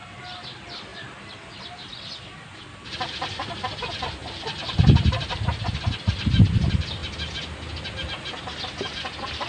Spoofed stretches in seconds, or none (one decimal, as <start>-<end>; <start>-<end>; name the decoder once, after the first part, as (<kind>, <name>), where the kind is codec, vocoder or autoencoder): 0.0-0.9 (vocoder, BigVGAN v2); 2.2-4.2; 5.8-7.0; 8.4-9.5

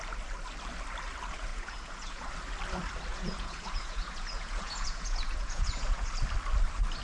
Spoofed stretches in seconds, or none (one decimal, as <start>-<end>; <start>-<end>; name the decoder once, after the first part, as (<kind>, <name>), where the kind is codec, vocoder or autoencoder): 1.5-2.3 (vocoder, Vocos); 3.1-6.1

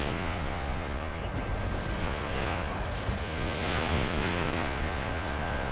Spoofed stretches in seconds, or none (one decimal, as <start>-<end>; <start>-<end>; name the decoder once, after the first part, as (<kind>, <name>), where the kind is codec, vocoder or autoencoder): 0.0-1.2 (vocoder, Vocos); 2.0-2.7; 3.2-5.7

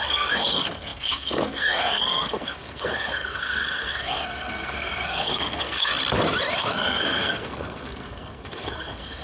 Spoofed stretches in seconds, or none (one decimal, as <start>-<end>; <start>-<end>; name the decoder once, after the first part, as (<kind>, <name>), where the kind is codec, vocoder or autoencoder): 0.0-5.9 (codec, SNAC); 6.6-9.2